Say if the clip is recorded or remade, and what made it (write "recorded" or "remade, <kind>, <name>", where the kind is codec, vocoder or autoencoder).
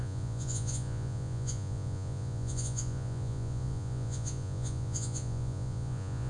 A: remade, vocoder, Vocos